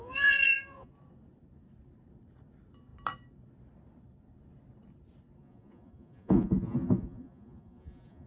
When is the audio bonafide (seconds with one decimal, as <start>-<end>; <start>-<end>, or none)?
0.9-5.4